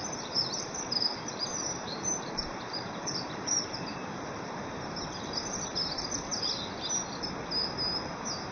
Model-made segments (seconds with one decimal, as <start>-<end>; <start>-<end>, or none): 0.0-4.6

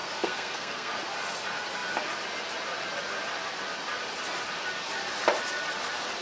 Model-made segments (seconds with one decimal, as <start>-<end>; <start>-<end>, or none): 0.0-0.9